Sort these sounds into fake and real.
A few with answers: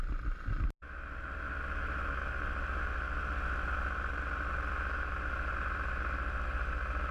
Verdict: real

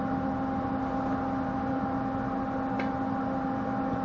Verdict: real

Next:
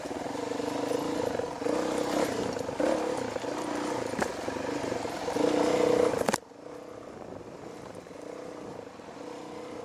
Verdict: real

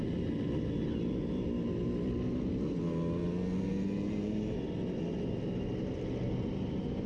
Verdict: real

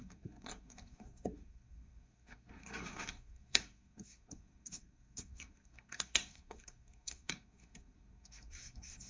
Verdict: fake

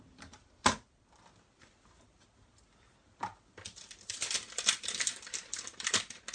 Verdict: real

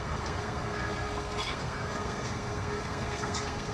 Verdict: fake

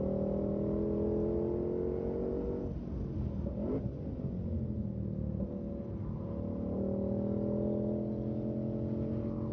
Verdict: real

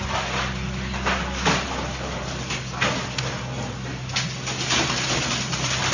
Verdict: real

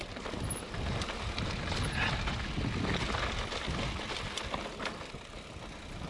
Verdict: real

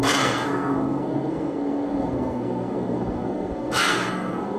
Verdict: fake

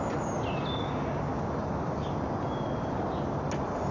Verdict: real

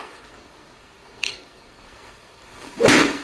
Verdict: fake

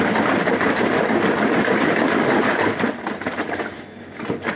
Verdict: real